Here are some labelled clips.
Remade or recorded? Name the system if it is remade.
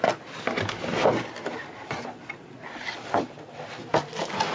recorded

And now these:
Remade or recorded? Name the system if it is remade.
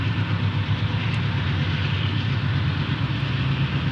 recorded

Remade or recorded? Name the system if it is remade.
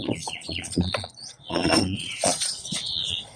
remade, vocoder, Vocos